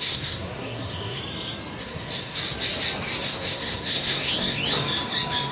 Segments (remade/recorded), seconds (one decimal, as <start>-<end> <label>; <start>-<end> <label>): 0.0-1.2 remade; 1.2-1.8 recorded; 1.8-2.4 remade; 2.4-3.2 recorded; 3.2-4.6 remade; 4.6-5.5 recorded